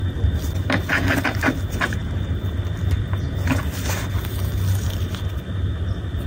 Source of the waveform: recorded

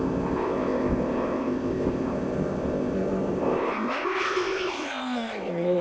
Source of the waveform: remade